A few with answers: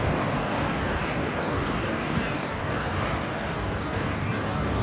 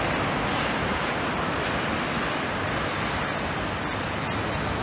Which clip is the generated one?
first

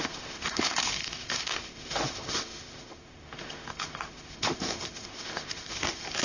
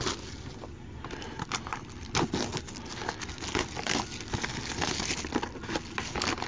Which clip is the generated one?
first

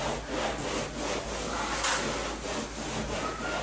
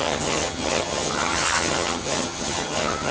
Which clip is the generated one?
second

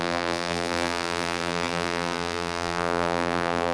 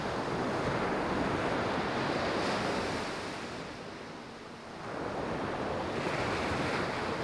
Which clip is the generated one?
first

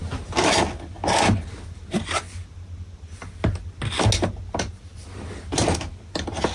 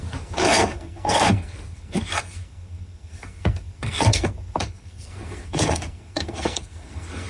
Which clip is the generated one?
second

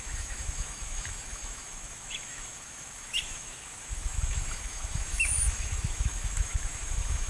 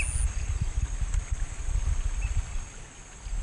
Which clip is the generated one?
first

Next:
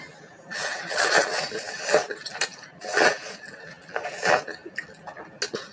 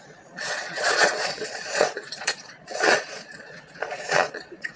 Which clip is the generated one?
second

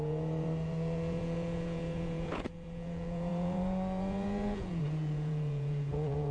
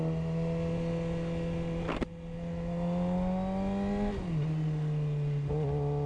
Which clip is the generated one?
first